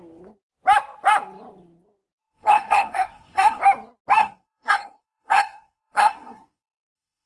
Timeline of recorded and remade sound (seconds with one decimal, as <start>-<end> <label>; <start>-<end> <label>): 0.0-2.2 recorded; 2.2-3.6 remade; 3.6-4.2 recorded; 4.2-7.3 remade